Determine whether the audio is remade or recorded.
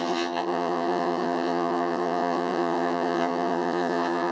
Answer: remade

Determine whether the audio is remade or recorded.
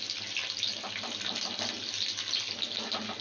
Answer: recorded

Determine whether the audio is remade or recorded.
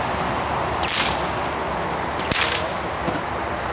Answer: recorded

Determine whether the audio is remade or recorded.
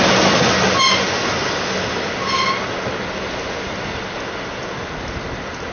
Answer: recorded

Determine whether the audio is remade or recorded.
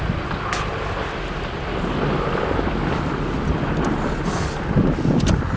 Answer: recorded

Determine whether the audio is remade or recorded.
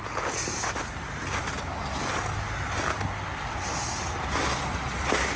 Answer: recorded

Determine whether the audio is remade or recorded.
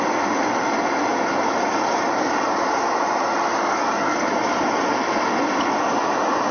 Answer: recorded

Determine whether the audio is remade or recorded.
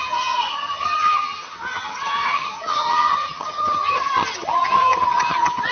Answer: remade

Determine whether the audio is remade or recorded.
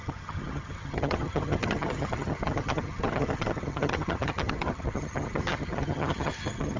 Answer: remade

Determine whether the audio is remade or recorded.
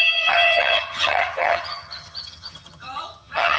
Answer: remade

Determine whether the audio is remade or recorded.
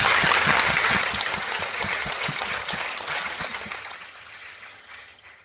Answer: remade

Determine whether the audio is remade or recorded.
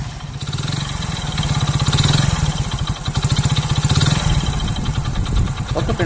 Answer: recorded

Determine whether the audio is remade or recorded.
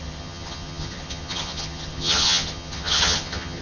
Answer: remade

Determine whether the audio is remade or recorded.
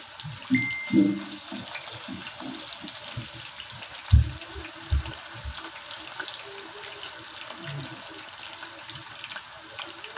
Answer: recorded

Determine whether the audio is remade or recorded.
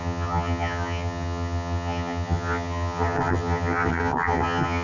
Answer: remade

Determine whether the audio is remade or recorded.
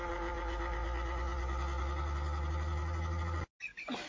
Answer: recorded